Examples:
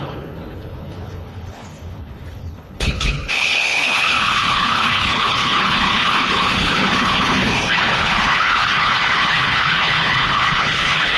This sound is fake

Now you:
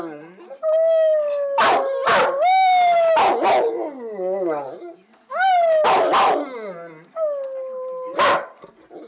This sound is real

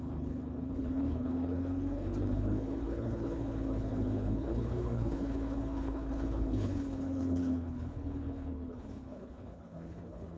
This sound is fake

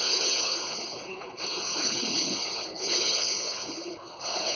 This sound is fake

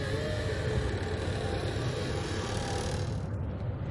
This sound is real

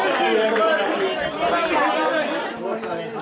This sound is real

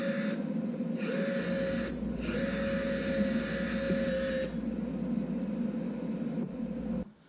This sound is real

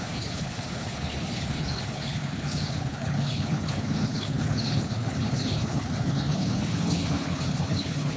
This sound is fake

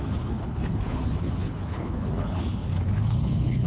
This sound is fake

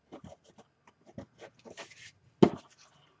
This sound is real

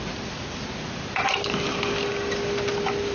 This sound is real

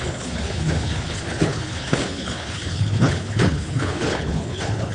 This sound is fake